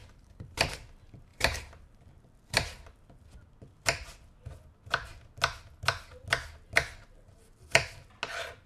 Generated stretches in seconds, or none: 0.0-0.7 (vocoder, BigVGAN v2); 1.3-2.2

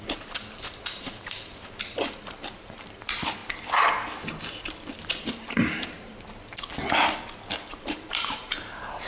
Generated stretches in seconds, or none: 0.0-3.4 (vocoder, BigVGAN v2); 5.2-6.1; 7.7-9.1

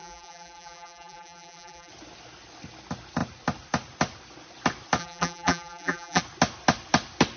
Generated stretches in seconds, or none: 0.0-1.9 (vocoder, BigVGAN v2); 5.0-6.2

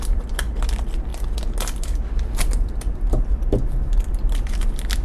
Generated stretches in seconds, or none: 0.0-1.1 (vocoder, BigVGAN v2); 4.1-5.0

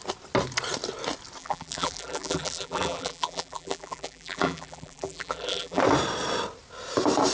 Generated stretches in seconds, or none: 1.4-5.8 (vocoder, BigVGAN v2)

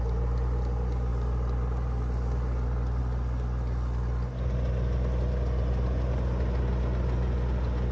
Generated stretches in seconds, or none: none

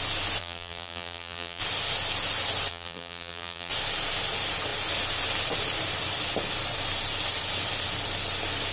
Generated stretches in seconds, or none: 0.4-1.6 (vocoder, BigVGAN v2); 2.7-3.7